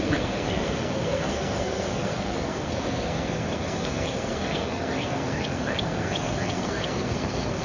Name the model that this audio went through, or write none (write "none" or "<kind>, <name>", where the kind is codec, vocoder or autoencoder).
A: codec, SNAC